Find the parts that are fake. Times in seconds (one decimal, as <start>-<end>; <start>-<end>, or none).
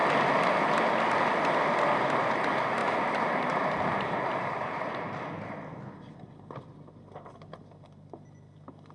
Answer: 2.8-5.3